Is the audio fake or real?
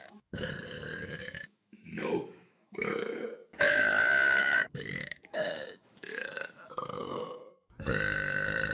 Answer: fake